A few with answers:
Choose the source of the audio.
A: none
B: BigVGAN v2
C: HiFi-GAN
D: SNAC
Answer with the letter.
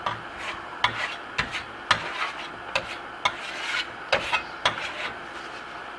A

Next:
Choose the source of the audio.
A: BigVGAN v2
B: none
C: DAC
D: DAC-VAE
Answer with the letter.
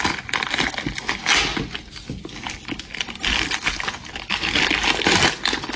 B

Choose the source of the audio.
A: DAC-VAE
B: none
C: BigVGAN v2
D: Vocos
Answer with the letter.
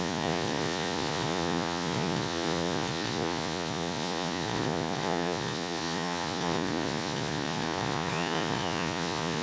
D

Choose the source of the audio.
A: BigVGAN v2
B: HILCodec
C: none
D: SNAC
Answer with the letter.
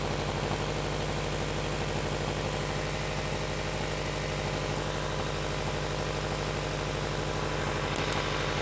C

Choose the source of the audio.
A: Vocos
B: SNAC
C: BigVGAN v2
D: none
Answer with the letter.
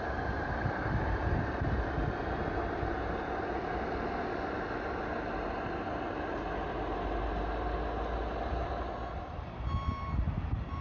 D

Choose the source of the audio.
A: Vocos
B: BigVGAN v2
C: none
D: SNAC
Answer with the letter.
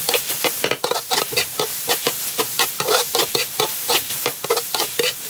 C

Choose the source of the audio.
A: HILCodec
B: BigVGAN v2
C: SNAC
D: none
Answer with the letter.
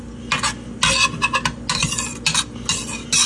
D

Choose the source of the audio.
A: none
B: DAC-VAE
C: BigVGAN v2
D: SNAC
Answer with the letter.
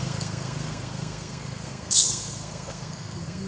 D